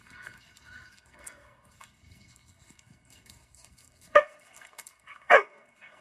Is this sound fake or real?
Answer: fake